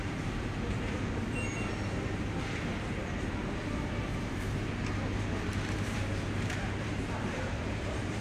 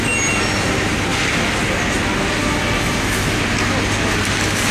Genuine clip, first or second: second